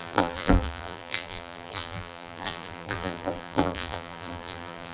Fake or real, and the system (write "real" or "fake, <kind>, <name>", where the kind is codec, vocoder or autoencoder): fake, vocoder, BigVGAN v2